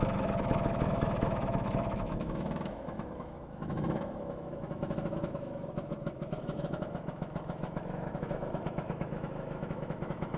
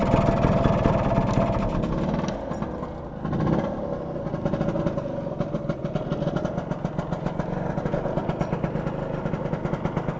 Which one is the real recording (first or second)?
second